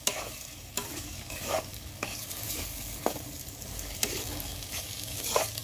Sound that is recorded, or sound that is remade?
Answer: remade